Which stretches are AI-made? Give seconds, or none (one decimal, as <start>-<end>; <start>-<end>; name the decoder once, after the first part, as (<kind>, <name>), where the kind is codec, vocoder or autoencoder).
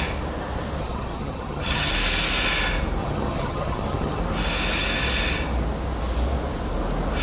0.8-1.9 (vocoder, HiFi-GAN); 3.0-4.2